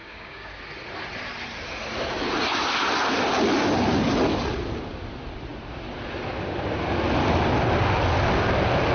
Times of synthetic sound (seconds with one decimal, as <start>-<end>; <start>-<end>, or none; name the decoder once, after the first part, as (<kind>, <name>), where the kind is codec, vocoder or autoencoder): 0.0-0.6 (codec, DAC)